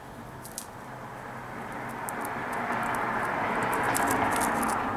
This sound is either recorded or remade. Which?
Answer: recorded